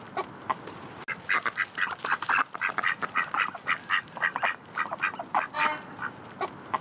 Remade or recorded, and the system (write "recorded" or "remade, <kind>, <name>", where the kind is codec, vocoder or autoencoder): recorded